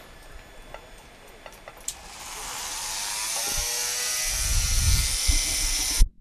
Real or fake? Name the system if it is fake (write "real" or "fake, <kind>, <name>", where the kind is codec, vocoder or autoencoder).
real